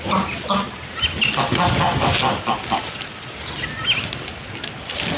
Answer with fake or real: real